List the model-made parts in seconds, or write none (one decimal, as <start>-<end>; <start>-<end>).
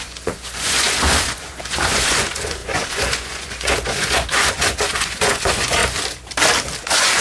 0.0-5.8; 6.8-7.2